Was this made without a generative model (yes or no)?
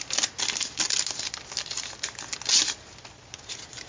yes